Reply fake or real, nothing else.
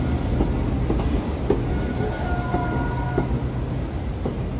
real